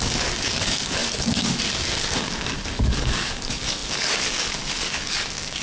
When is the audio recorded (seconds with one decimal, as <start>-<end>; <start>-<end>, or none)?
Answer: none